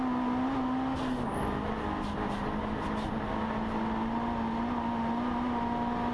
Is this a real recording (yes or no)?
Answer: yes